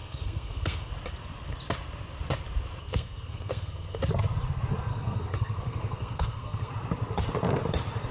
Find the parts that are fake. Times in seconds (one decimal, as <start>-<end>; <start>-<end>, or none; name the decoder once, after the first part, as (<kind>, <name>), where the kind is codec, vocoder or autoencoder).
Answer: 0.0-0.9 (codec, SNAC); 2.8-4.0; 4.9-6.7